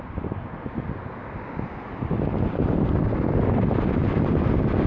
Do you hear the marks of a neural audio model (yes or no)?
no